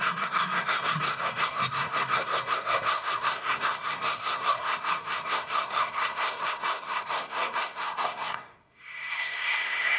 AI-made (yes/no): yes